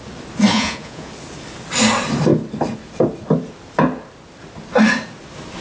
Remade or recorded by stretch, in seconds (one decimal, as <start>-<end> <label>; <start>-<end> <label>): 0.0-0.5 recorded; 0.5-1.1 remade; 1.1-5.6 recorded